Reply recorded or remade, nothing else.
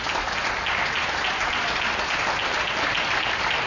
recorded